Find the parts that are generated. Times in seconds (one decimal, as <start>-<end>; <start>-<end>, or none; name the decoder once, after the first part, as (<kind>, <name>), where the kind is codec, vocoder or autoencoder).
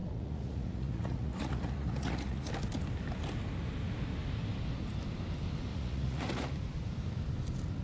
0.0-2.5 (vocoder, Vocos); 5.7-6.5